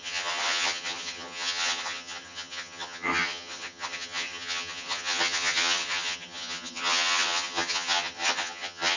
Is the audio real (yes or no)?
no